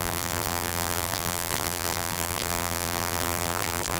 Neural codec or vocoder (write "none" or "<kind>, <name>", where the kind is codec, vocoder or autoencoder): vocoder, BigVGAN v2